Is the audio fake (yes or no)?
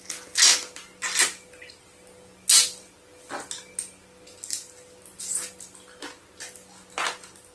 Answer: no